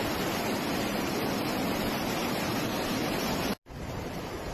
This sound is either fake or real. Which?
real